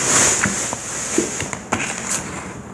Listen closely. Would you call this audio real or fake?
real